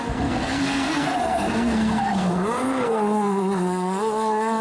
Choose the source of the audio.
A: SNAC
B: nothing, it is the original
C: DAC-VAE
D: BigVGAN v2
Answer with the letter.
A